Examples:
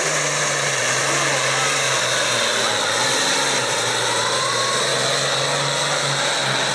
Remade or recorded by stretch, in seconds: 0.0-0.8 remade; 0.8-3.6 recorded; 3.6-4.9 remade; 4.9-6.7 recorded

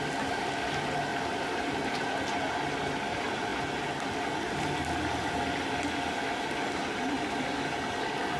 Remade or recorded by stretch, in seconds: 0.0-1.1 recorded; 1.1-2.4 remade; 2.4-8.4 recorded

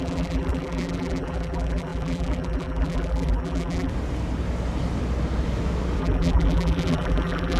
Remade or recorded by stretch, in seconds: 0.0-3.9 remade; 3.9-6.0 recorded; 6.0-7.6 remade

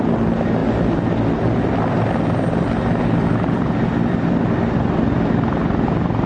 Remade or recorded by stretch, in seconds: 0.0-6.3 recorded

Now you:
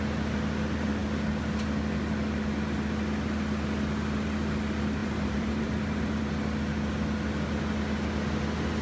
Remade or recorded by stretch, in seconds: 0.0-5.0 recorded; 5.0-6.2 remade; 6.2-8.8 recorded

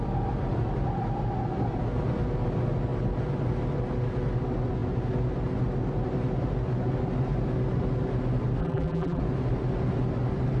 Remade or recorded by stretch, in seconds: 0.0-8.6 recorded; 8.6-9.2 remade; 9.2-10.6 recorded

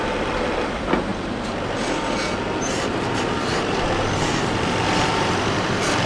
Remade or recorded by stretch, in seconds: 0.0-1.1 remade; 1.1-2.7 recorded; 2.7-6.1 remade